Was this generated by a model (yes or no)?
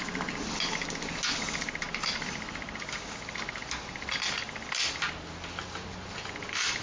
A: no